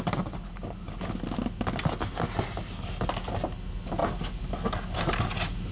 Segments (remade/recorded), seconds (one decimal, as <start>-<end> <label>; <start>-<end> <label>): 0.0-5.7 recorded